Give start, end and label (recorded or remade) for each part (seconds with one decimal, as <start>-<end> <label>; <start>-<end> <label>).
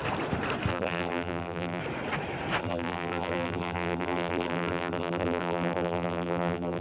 0.0-0.7 recorded; 0.7-1.8 remade; 1.8-2.6 recorded; 2.6-6.8 remade